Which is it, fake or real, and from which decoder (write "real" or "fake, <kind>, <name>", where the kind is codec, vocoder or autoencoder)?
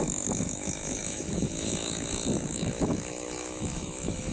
fake, autoencoder, DAC-VAE